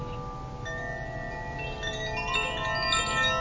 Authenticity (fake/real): real